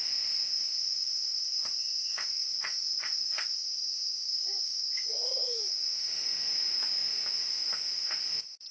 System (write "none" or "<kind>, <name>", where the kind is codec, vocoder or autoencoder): autoencoder, DAC-VAE